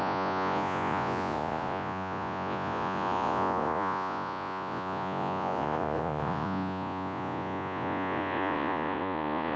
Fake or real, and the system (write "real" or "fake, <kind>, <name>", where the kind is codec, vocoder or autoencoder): fake, vocoder, Vocos